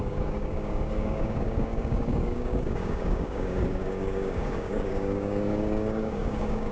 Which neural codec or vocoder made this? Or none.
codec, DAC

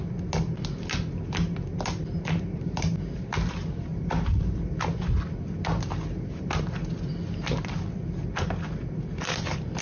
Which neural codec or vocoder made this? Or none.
none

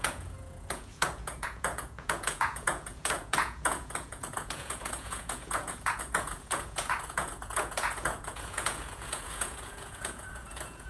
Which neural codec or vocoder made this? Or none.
vocoder, Vocos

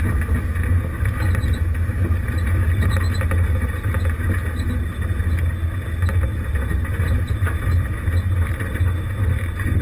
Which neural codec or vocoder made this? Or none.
none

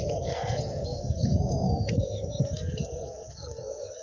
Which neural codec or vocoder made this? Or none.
codec, SNAC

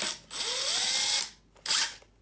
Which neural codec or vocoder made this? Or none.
none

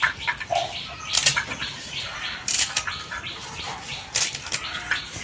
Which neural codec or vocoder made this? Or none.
none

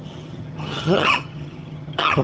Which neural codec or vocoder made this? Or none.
vocoder, HiFi-GAN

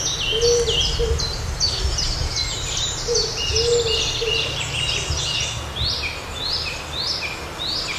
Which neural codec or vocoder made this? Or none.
none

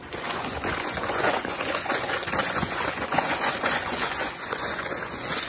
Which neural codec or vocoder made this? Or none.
vocoder, Vocos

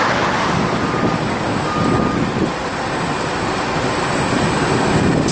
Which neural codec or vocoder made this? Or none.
none